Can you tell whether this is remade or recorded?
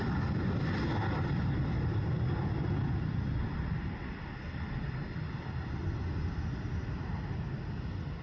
recorded